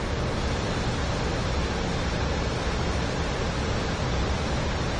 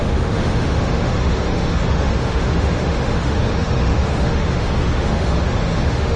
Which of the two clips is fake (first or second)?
second